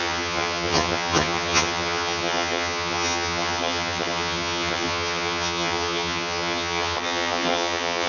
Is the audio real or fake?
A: fake